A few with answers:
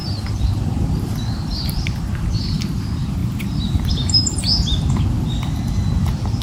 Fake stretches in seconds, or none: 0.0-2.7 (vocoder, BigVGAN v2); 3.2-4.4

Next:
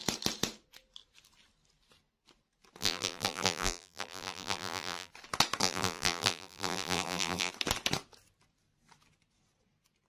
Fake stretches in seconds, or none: 2.8-5.1 (vocoder, BigVGAN v2); 5.6-7.5